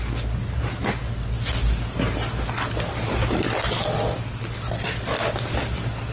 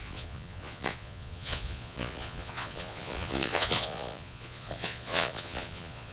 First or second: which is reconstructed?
second